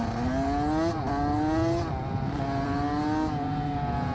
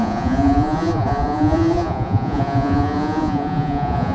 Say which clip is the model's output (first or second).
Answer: second